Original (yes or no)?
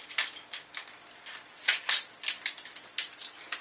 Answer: yes